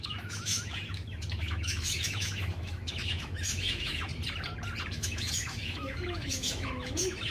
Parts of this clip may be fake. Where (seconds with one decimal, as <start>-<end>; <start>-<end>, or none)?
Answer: 0.0-4.1; 4.9-7.3